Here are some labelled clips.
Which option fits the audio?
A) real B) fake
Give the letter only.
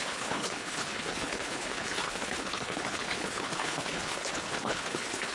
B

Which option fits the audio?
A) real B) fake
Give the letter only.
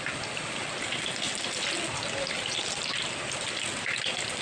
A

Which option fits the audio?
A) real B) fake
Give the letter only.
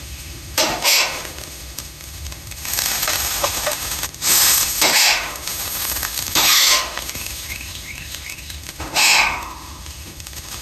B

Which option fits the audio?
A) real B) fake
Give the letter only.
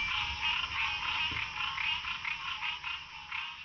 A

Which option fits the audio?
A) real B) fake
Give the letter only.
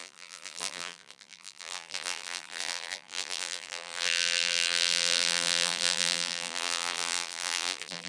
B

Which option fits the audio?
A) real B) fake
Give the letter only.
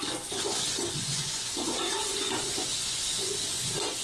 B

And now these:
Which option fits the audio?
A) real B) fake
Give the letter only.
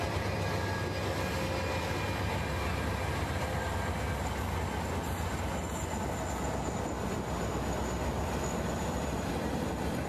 A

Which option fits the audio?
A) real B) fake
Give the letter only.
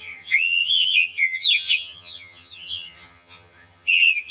B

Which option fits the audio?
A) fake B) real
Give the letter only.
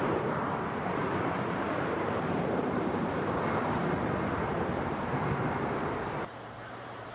A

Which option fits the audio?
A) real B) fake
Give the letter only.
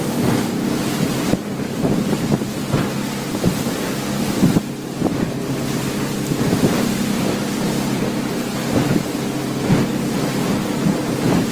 A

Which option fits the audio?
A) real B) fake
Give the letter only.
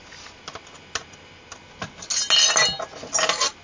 A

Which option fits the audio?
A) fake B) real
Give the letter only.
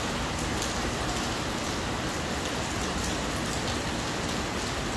B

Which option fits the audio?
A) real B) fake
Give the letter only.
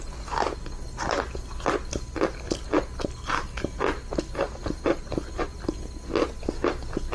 A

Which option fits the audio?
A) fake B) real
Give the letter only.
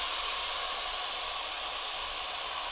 B